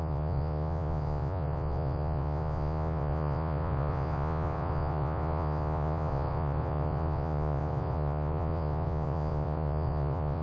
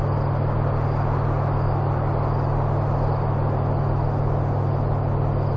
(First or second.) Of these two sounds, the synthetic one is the first